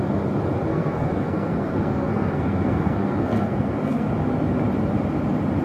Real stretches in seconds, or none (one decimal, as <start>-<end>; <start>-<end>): 0.0-0.7; 4.1-5.6